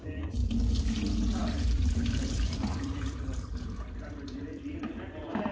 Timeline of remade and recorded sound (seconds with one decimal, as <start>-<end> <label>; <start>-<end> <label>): 0.0-0.4 recorded; 0.4-1.0 remade; 1.0-1.4 recorded; 1.4-4.7 remade; 4.7-5.5 recorded